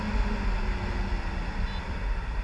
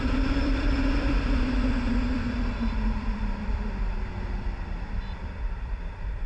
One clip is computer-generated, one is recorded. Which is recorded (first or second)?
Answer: first